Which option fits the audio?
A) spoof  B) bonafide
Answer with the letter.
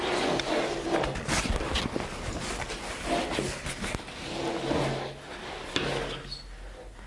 B